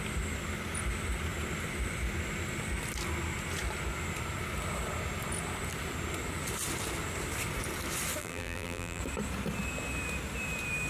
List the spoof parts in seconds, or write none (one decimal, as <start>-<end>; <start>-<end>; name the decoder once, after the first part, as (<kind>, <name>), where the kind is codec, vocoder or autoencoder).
8.2-9.0 (vocoder, BigVGAN v2)